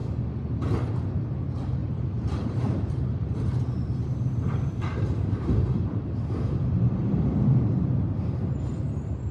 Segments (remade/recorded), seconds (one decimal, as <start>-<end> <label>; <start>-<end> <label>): 0.0-1.8 recorded; 1.8-6.8 remade; 6.8-9.3 recorded